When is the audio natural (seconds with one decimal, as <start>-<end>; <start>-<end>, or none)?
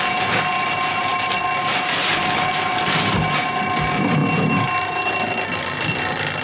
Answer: 0.0-6.4